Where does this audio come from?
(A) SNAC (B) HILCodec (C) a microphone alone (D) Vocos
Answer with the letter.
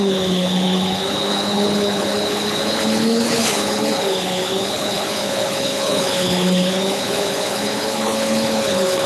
B